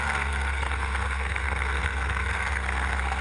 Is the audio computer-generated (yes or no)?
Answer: yes